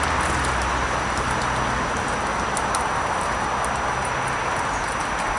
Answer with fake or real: real